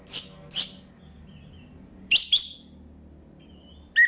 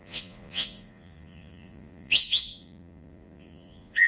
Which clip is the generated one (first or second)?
second